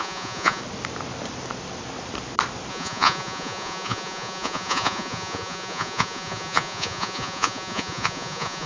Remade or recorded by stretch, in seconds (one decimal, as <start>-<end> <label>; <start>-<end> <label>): 0.0-0.6 remade; 0.6-2.7 recorded; 2.7-8.7 remade

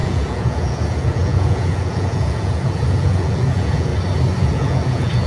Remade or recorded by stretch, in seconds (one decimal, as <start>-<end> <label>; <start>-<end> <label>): 0.0-3.9 remade; 3.9-4.4 recorded; 4.4-5.3 remade

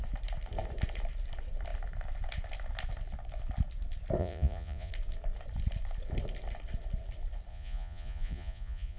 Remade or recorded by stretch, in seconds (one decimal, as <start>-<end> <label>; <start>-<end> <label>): 0.0-4.2 recorded; 4.2-4.9 remade; 4.9-7.5 recorded; 7.5-9.0 remade

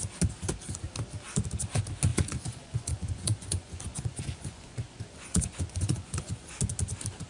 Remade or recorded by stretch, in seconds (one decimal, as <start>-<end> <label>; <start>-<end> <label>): 0.0-2.1 recorded; 2.1-6.5 remade; 6.5-7.3 recorded